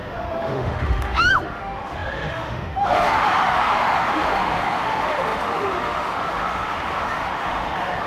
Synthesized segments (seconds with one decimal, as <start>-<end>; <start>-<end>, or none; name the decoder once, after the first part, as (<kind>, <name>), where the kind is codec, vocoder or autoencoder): 0.0-8.1 (autoencoder, DAC-VAE)

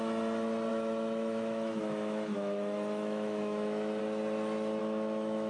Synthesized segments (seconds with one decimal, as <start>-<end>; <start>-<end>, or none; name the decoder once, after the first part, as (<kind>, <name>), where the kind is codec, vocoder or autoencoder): 0.7-4.0 (autoencoder, DAC-VAE); 4.8-5.5

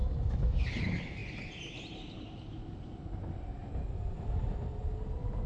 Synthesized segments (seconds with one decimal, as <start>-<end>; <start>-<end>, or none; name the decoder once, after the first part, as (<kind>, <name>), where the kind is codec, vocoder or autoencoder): 0.0-0.6 (autoencoder, DAC-VAE)

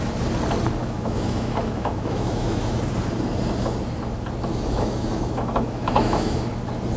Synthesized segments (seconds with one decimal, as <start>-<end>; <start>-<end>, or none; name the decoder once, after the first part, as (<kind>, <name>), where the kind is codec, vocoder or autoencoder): 0.8-2.8 (autoencoder, DAC-VAE); 4.5-6.5

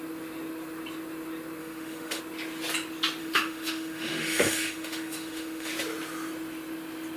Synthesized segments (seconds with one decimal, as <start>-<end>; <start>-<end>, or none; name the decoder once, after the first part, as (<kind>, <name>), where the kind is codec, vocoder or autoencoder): 1.6-2.2 (autoencoder, DAC-VAE); 3.2-5.7